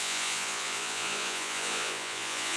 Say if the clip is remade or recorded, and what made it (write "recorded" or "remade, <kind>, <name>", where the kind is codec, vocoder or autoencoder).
remade, vocoder, Vocos